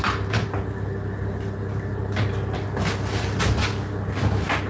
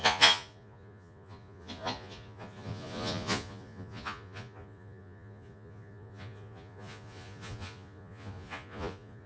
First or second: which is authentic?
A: first